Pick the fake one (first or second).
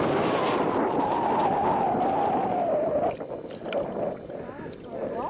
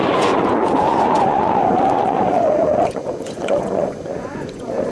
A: second